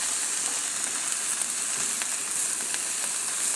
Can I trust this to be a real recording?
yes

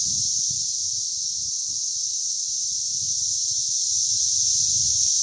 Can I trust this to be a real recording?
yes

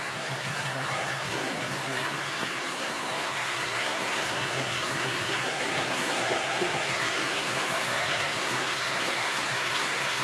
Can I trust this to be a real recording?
no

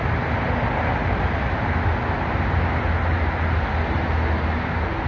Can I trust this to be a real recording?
yes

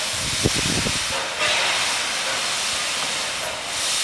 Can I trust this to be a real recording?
yes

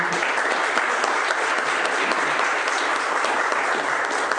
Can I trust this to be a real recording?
yes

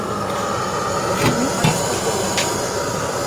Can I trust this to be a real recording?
yes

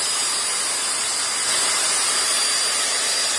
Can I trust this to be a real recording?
yes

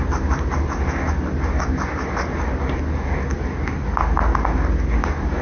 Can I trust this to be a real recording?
yes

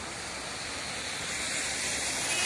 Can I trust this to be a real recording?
yes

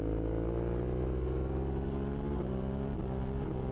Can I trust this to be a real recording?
yes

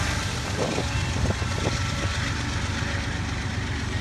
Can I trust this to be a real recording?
yes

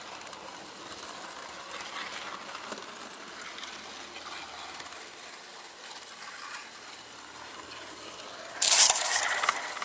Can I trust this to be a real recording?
yes